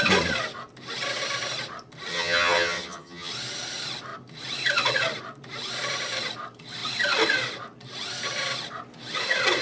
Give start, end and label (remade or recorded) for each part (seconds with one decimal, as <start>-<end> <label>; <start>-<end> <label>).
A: 0.0-2.1 recorded; 2.1-3.3 remade; 3.3-9.6 recorded